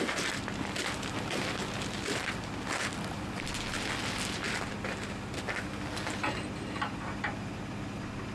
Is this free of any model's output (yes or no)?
yes